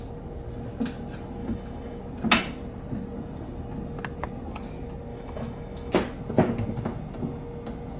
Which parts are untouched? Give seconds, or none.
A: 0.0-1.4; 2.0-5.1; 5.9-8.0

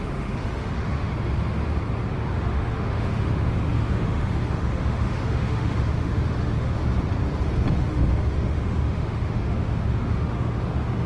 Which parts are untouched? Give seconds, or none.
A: 1.1-2.1; 6.8-7.7

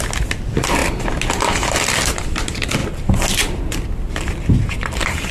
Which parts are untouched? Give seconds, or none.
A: 0.0-5.3

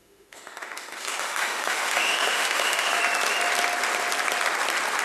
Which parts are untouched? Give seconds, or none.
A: 3.0-5.0